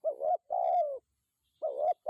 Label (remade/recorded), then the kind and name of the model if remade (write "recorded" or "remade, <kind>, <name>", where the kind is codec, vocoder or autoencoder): recorded